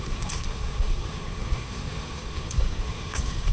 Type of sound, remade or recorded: remade